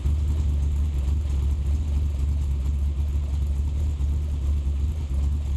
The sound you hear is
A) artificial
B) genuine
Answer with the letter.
B